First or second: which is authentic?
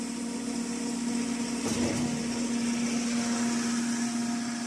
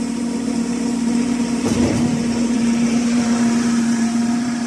first